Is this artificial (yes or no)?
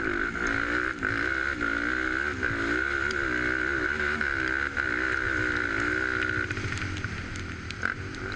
no